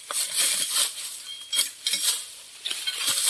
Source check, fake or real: real